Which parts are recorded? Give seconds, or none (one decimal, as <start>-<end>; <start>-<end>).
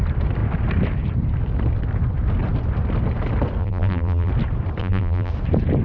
0.0-3.6; 4.3-4.8; 5.3-5.8